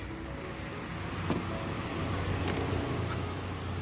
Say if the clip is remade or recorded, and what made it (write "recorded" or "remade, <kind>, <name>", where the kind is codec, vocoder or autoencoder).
recorded